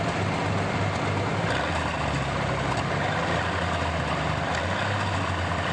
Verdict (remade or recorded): recorded